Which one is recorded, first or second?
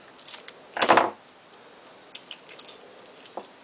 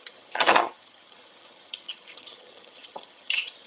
first